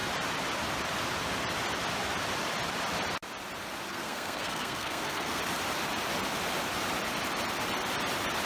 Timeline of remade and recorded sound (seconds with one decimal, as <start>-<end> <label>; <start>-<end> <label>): 0.0-3.9 recorded; 3.9-5.4 remade; 5.4-8.5 recorded